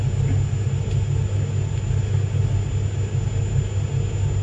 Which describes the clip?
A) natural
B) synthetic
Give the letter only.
A